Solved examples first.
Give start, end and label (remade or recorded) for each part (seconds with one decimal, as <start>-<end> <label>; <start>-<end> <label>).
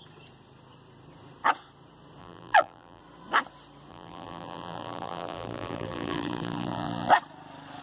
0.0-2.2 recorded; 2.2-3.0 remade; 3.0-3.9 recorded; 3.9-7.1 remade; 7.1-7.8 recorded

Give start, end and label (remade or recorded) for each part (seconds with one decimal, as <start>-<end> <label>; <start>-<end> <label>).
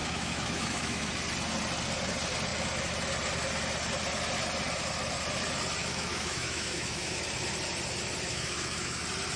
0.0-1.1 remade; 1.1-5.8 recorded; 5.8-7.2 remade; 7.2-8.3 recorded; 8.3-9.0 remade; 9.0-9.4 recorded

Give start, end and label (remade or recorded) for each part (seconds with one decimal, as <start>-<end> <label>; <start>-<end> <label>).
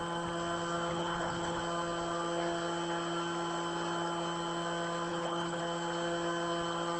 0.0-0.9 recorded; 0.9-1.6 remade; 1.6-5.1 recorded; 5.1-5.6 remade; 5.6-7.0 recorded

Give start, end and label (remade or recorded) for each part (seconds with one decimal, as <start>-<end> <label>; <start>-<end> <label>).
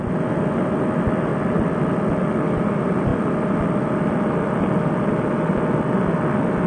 0.0-6.7 recorded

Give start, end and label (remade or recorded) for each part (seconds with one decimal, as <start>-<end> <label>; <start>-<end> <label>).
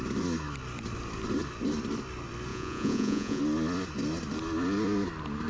0.0-2.5 recorded; 2.5-3.4 remade; 3.4-5.5 recorded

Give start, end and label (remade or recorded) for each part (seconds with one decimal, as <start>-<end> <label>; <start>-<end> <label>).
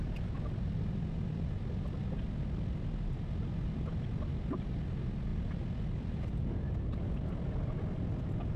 0.0-8.6 recorded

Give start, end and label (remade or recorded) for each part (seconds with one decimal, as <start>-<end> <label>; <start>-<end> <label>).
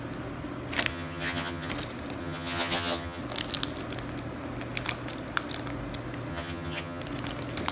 0.0-0.9 recorded; 0.9-1.7 remade; 1.7-2.2 recorded; 2.2-3.2 remade; 3.2-6.3 recorded; 6.3-7.0 remade; 7.0-7.7 recorded